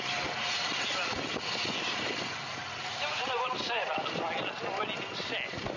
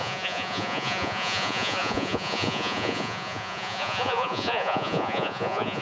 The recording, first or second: first